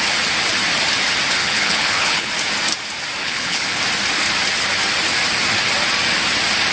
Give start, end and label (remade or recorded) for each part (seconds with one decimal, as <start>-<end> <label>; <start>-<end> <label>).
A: 0.0-1.4 recorded; 1.4-2.3 remade; 2.3-3.2 recorded; 3.2-3.8 remade; 3.8-6.7 recorded